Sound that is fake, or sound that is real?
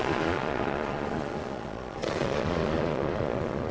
fake